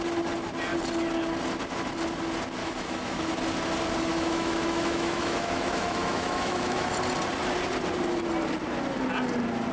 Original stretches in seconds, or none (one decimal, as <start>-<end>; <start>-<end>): 0.0-2.6; 3.3-4.1; 6.9-9.7